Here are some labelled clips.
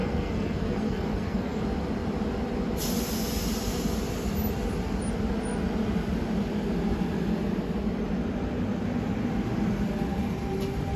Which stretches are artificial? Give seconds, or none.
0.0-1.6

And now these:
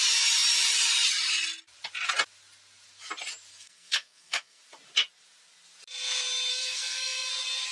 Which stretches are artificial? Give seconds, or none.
3.5-4.6; 6.5-7.3

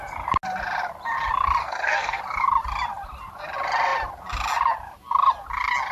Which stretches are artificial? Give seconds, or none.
1.6-2.2

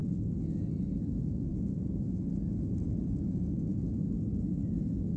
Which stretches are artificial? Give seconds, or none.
none

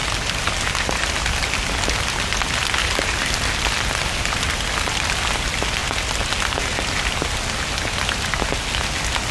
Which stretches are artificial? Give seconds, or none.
none